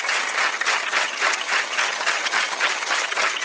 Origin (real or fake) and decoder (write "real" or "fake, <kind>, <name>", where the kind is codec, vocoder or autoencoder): fake, vocoder, HiFi-GAN